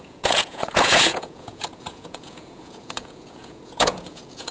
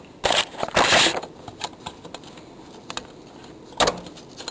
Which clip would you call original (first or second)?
second